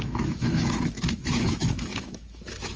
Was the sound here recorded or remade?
remade